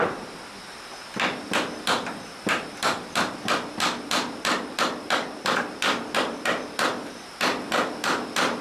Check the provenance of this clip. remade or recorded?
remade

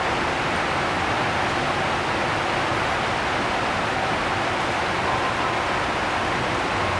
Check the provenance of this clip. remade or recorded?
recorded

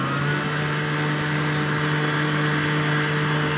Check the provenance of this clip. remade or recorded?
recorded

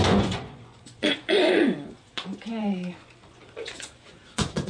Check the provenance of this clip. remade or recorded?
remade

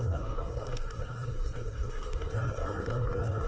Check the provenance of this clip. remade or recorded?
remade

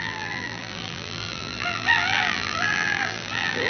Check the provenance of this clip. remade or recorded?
remade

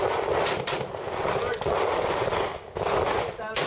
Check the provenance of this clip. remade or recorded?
recorded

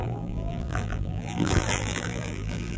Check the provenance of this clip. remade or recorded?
remade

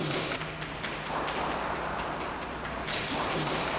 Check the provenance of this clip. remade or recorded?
recorded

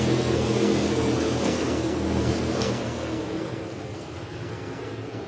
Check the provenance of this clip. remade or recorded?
remade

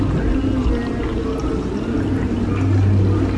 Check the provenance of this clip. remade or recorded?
recorded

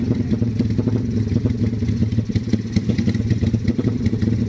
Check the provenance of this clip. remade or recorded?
recorded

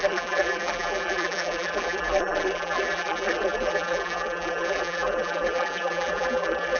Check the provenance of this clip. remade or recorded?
remade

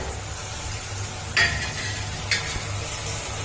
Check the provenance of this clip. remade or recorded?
recorded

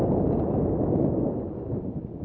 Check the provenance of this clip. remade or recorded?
recorded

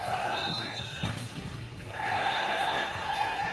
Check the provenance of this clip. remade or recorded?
remade